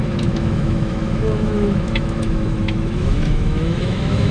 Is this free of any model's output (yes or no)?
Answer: no